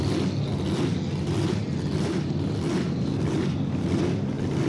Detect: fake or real real